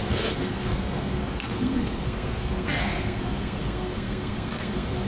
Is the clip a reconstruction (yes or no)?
yes